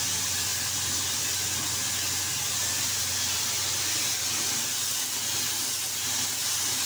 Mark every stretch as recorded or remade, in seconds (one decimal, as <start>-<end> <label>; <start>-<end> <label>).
0.0-2.6 recorded; 2.6-4.1 remade; 4.1-6.9 recorded